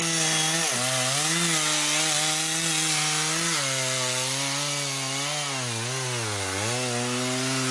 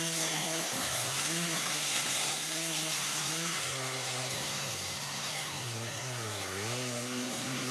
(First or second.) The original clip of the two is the first